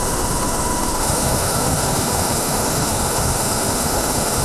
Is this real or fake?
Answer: fake